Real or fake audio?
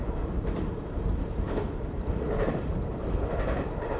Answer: fake